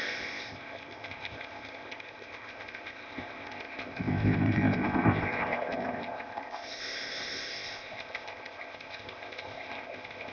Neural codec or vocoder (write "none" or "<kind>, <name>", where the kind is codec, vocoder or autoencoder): codec, ZipCodec